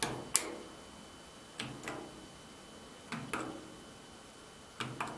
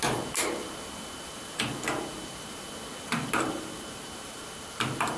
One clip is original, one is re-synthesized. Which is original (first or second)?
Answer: first